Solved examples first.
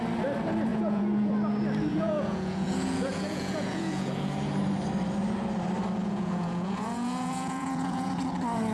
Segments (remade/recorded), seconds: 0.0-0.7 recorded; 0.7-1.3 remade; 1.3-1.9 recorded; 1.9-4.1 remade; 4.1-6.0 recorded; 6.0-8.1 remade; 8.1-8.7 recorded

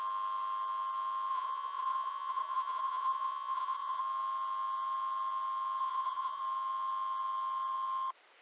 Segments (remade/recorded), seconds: 0.0-1.3 recorded; 1.3-4.0 remade; 4.0-5.8 recorded; 5.8-6.4 remade; 6.4-8.4 recorded

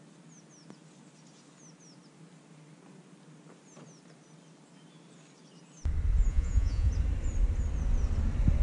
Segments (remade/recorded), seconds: 0.0-6.3 recorded; 6.3-6.9 remade; 6.9-8.6 recorded

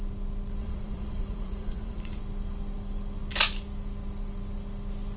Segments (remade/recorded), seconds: 0.0-0.6 recorded; 0.6-2.2 remade; 2.2-5.2 recorded

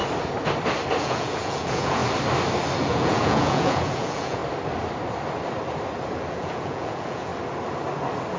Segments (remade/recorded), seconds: 0.0-1.0 recorded; 1.0-2.0 remade; 2.0-2.8 recorded; 2.8-4.4 remade; 4.4-6.3 recorded; 6.3-7.3 remade; 7.3-8.4 recorded

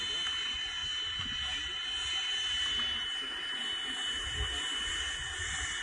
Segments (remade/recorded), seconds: 0.0-5.8 recorded